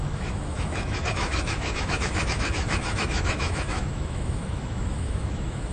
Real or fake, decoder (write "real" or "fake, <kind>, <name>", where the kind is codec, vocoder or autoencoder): fake, autoencoder, DAC-VAE